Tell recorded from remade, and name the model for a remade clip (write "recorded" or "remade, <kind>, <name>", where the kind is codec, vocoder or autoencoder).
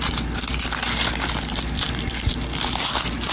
recorded